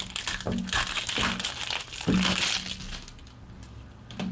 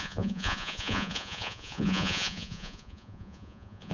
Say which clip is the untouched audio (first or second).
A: first